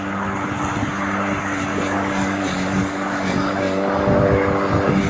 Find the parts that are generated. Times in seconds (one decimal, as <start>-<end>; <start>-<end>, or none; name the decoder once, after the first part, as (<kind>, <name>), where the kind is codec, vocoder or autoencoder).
1.7-4.1 (codec, DAC)